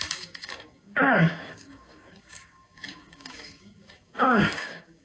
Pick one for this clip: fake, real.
fake